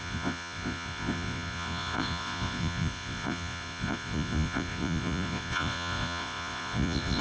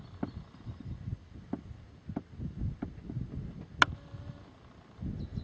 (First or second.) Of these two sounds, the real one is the second